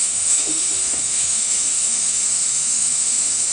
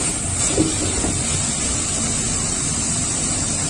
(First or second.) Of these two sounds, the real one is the second